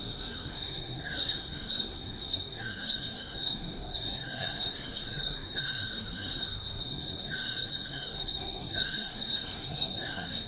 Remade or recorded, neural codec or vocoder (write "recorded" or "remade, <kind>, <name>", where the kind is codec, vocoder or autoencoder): remade, codec, SNAC